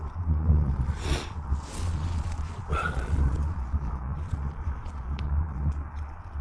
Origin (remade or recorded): remade